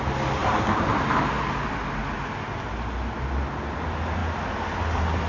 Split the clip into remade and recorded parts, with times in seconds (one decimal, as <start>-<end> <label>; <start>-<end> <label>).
0.0-5.3 recorded